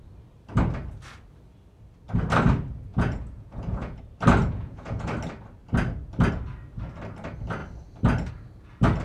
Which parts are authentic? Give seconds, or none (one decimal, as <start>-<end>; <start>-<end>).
0.0-2.9; 4.0-4.4; 5.1-9.0

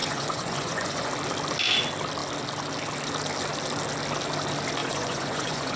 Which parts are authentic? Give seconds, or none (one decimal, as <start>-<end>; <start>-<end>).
1.1-4.8

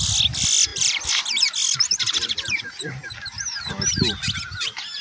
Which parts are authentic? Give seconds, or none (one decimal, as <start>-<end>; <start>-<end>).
0.0-5.0

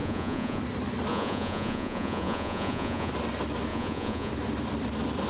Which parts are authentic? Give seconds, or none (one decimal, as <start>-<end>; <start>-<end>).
0.6-1.1; 3.1-3.7; 4.3-5.3

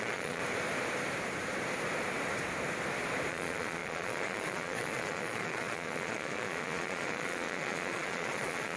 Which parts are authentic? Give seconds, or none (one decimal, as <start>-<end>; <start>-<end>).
0.4-3.3

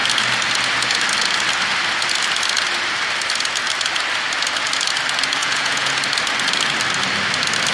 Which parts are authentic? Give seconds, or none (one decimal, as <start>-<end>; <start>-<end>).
0.0-5.4; 5.9-7.7

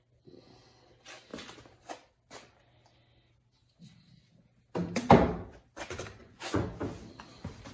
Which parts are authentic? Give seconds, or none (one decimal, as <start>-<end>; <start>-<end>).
0.0-6.2; 6.8-7.7